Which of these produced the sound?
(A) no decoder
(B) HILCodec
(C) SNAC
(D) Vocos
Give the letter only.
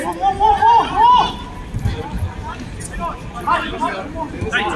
A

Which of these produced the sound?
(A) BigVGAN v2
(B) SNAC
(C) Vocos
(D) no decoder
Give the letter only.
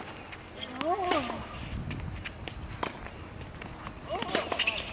D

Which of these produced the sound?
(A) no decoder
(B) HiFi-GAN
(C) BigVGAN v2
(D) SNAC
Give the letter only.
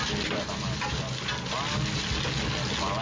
A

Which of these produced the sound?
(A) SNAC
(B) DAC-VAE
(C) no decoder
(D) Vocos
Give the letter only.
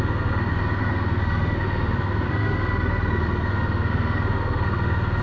A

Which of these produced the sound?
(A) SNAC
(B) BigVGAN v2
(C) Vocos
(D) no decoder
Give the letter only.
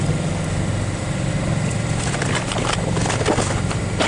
D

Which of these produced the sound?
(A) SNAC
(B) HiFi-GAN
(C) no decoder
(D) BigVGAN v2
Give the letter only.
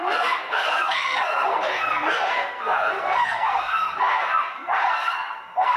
A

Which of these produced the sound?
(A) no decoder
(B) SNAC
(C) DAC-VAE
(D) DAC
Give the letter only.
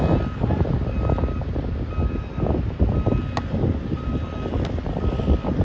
A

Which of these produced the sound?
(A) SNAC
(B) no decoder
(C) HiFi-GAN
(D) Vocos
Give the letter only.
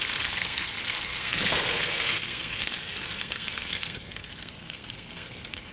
A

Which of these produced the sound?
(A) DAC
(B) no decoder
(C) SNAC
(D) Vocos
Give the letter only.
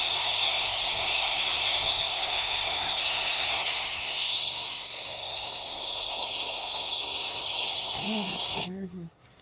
C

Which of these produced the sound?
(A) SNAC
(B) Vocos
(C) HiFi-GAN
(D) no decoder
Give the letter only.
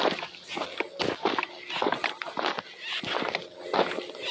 D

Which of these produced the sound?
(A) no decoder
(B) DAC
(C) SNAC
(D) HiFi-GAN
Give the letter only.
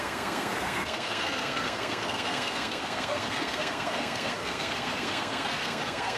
C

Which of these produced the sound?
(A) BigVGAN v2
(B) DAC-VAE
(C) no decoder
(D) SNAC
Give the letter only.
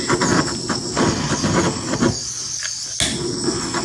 C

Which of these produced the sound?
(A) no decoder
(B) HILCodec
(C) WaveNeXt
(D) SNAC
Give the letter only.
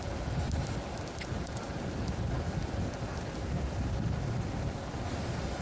A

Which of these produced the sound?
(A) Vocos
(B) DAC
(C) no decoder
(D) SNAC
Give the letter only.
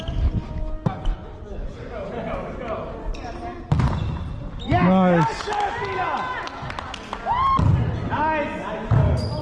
C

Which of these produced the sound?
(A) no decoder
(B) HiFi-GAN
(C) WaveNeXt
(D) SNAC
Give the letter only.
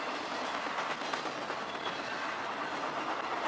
A